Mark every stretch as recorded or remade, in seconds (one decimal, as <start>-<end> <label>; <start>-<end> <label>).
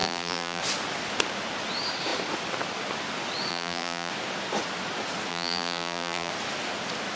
0.0-0.6 remade; 0.6-3.5 recorded; 3.5-4.1 remade; 4.1-5.3 recorded; 5.3-6.3 remade; 6.3-7.2 recorded